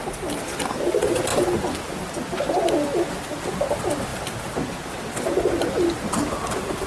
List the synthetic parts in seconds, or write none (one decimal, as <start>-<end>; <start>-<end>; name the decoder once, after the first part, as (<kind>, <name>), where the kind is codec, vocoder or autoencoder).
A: 2.9-3.5 (vocoder, BigVGAN v2)